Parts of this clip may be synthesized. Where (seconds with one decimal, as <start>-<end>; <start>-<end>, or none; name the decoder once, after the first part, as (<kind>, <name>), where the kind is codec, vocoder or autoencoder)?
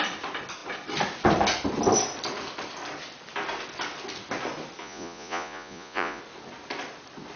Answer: 4.8-6.2 (vocoder, Vocos)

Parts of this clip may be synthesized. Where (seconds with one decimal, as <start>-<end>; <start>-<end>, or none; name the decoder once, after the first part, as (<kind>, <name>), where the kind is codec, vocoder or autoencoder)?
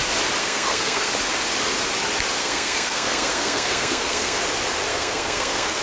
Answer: 0.4-1.1 (codec, SNAC); 2.4-4.4; 4.9-5.8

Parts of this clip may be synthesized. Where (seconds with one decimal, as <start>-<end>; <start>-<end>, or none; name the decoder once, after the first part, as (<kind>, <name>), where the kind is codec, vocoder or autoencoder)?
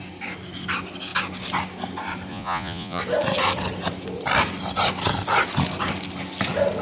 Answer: 2.3-3.0 (vocoder, Vocos)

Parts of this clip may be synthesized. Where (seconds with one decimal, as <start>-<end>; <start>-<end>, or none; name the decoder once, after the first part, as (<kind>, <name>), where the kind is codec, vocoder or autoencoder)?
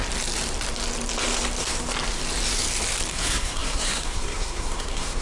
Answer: 3.1-5.2 (codec, SNAC)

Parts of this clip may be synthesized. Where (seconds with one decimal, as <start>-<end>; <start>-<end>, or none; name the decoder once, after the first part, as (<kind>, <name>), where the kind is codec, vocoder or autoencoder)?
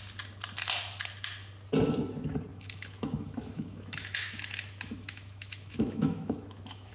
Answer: 2.5-6.9 (autoencoder, DAC-VAE)